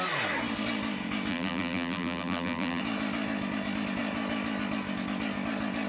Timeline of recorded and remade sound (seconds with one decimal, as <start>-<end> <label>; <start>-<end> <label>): 0.0-1.3 recorded; 1.3-2.8 remade; 2.8-5.9 recorded